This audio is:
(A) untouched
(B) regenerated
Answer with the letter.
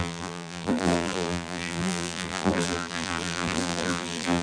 B